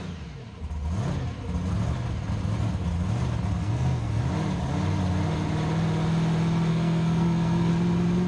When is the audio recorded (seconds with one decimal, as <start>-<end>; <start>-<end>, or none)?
0.0-3.6; 4.2-6.7; 7.7-8.3